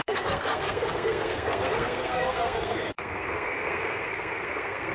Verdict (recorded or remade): remade